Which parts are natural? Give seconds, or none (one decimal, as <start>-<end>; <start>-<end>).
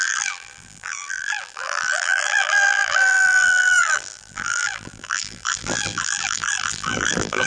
none